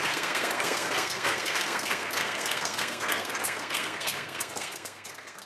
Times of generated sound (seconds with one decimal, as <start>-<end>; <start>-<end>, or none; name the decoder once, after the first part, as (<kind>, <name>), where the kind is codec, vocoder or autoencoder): 0.0-5.5 (codec, SNAC)